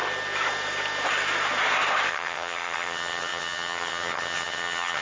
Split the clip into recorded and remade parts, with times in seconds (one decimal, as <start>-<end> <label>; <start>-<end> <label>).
0.0-2.1 recorded; 2.1-5.0 remade